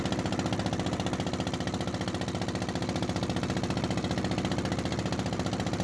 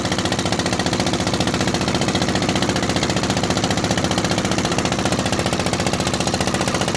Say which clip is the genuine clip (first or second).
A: first